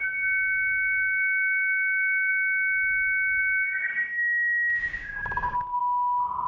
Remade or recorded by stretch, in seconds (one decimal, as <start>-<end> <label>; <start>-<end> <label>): 0.0-2.3 remade; 2.3-3.4 recorded; 3.4-3.9 remade; 3.9-4.8 recorded; 4.8-5.8 remade; 5.8-6.5 recorded